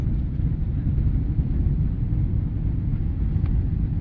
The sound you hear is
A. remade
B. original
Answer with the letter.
B